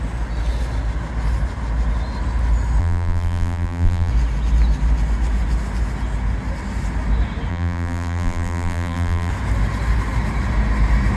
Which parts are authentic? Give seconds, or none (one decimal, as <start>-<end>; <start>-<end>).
0.0-2.8; 4.1-7.5; 9.3-11.2